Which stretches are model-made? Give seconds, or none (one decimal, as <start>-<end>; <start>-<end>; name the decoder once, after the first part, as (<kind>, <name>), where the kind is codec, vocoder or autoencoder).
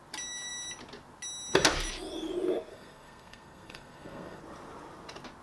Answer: 2.7-4.4 (codec, SNAC)